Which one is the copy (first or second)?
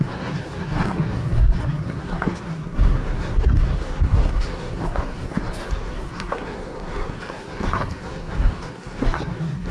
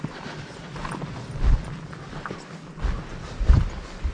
first